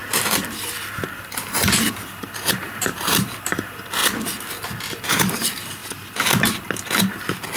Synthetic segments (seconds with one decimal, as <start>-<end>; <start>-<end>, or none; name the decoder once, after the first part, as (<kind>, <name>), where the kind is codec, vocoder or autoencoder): 1.2-4.0 (vocoder, BigVGAN v2); 4.9-5.8